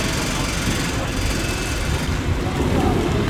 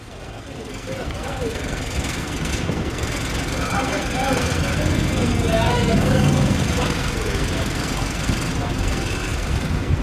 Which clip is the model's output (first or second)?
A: second